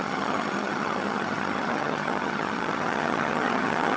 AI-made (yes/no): yes